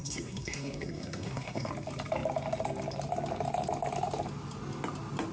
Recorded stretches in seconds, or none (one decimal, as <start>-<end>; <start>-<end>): 1.7-5.3